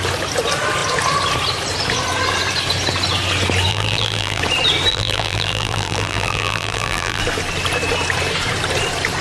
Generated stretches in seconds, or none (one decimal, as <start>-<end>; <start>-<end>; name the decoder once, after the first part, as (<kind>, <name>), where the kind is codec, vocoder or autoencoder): 3.7-4.4 (vocoder, BigVGAN v2); 4.9-7.2